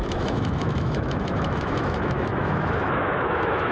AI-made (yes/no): yes